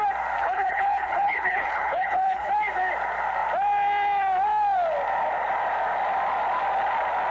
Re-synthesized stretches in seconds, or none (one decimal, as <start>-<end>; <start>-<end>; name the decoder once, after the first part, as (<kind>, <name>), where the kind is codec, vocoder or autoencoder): 0.4-2.5 (codec, HILCodec)